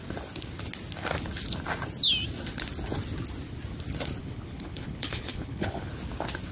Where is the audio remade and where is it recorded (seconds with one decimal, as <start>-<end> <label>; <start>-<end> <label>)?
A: 0.0-4.2 recorded; 4.2-5.9 remade; 5.9-6.5 recorded